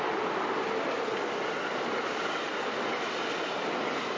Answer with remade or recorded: recorded